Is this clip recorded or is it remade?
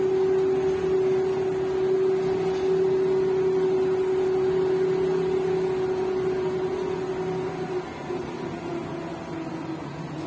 recorded